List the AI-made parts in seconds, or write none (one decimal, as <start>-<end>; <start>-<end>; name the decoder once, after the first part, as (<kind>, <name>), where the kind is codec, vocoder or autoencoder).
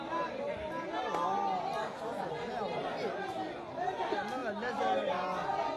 none